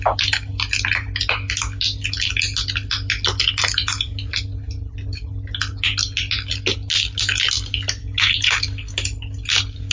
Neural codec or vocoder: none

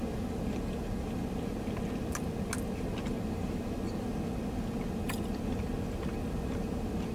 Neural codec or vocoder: none